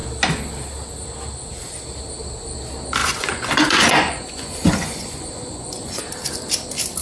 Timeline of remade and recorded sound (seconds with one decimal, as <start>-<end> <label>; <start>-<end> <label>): 0.0-3.0 recorded; 3.0-6.0 remade; 6.0-7.0 recorded